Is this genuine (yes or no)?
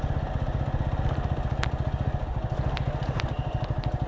yes